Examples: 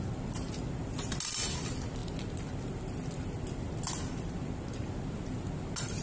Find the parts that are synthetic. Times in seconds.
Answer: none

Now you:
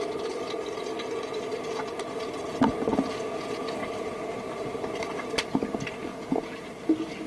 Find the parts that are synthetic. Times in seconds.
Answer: 6.1-6.7 (vocoder, Vocos)

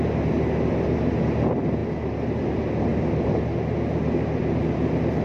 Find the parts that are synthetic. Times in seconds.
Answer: none

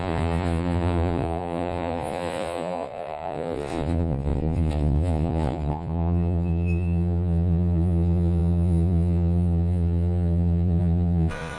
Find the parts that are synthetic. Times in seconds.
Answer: 0.0-11.6 (vocoder, Vocos)

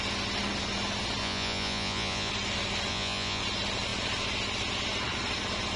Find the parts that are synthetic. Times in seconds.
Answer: 1.2-2.3 (vocoder, Vocos); 2.9-3.4

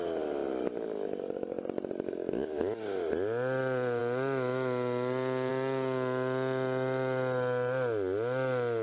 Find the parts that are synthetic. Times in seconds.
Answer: none

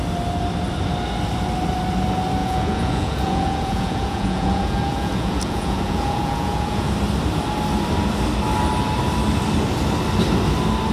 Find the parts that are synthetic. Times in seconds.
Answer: 2.4-6.9 (vocoder, Vocos)